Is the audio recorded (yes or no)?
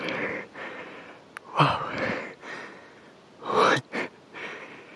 yes